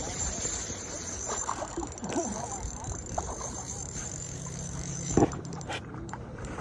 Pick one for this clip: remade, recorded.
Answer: remade